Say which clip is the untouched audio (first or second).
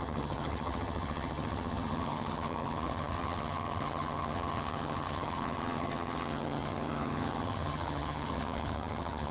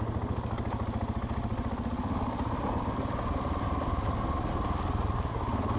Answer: second